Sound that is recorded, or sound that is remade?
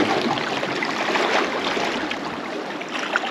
recorded